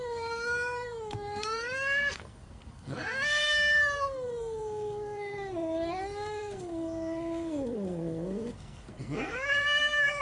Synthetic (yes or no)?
yes